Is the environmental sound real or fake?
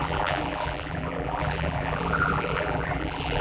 fake